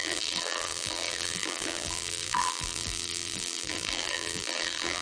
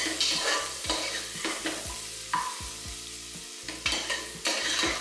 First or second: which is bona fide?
second